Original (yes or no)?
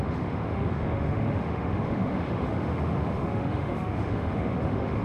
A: no